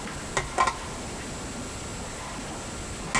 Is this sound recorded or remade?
recorded